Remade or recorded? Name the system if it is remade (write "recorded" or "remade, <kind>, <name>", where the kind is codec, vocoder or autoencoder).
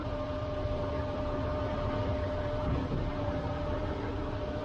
remade, vocoder, BigVGAN v2